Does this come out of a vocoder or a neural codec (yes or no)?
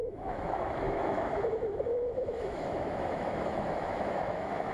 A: yes